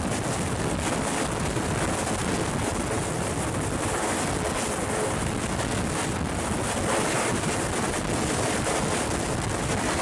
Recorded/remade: recorded